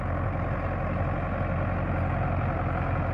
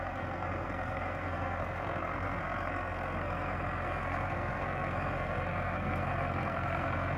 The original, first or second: first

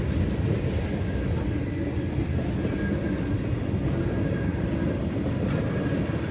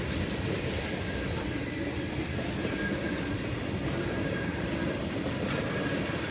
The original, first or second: first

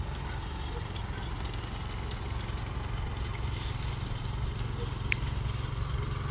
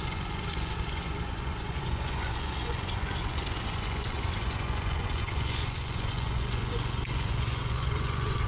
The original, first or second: first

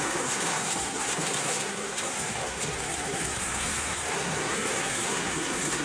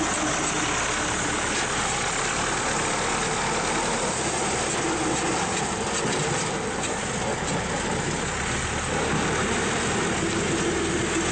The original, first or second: second